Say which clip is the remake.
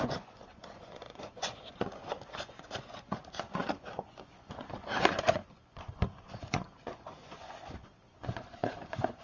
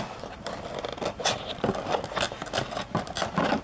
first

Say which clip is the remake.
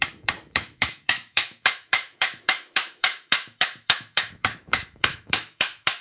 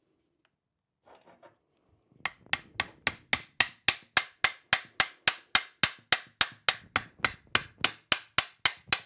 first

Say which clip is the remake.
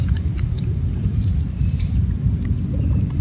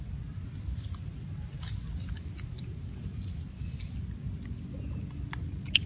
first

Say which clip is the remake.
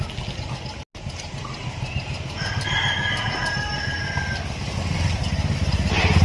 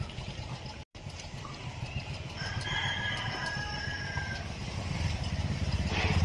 second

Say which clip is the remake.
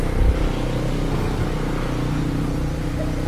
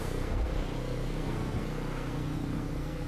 second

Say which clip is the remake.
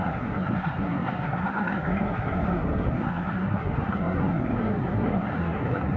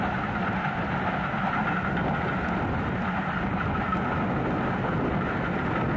first